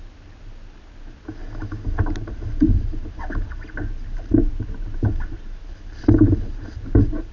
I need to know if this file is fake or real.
real